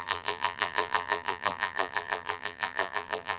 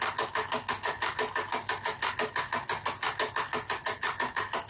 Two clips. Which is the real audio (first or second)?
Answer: second